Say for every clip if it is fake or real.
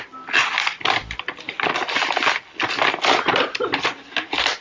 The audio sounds real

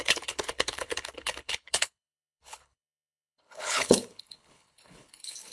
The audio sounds fake